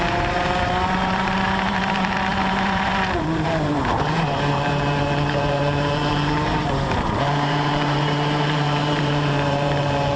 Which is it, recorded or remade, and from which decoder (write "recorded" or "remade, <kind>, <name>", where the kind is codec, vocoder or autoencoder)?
remade, vocoder, BigVGAN v2